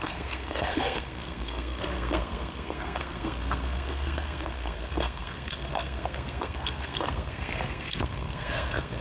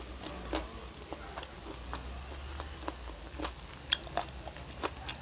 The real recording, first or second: second